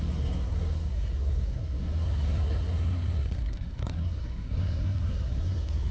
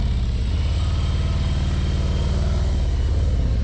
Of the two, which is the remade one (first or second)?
first